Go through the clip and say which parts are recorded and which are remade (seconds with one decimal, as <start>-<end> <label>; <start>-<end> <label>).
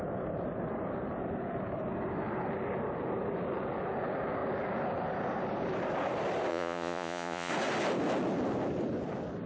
0.0-6.5 recorded; 6.5-7.5 remade; 7.5-9.5 recorded